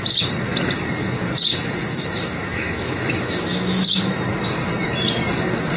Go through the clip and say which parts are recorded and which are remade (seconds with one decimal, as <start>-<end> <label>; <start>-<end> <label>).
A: 0.0-1.5 recorded; 1.5-4.2 remade; 4.2-5.8 recorded